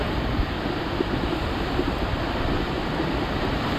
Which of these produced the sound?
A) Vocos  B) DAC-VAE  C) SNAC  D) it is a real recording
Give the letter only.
D